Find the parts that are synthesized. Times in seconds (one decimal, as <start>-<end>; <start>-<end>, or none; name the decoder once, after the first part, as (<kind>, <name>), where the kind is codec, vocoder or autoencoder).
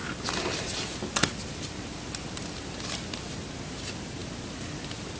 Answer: none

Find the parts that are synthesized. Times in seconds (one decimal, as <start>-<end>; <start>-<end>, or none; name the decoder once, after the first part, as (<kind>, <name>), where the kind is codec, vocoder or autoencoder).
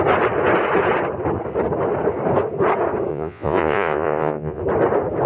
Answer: 3.1-4.6 (vocoder, Vocos)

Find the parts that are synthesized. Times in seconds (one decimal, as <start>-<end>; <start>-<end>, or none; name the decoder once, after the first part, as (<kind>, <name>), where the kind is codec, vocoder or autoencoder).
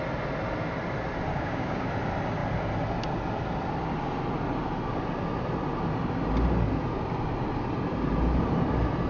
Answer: 1.3-1.9 (codec, DAC)